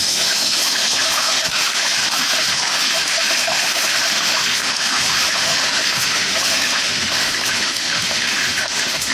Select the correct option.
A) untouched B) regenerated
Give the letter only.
B